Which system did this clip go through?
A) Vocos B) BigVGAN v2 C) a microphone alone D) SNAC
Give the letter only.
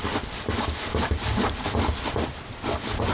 B